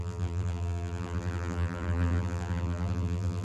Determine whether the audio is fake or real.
fake